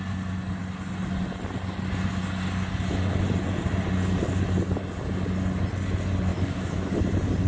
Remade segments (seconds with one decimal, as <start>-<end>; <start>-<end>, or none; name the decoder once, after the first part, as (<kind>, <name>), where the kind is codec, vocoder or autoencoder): 6.3-6.9 (autoencoder, DAC-VAE)